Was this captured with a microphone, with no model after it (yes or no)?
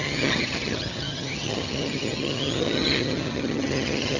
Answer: no